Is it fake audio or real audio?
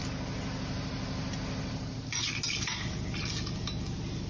real